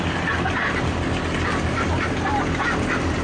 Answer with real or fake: real